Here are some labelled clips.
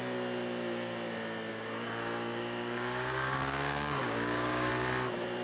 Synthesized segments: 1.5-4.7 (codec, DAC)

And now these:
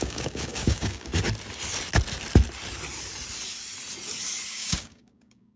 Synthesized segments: 0.0-1.1 (codec, DAC); 4.5-5.6